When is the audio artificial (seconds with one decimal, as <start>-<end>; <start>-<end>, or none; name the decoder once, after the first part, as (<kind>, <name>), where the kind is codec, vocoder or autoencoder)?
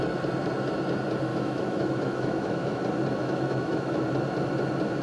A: 1.3-2.8 (autoencoder, DAC-VAE); 3.2-4.0